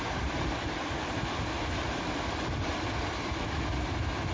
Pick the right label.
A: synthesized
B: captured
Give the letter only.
B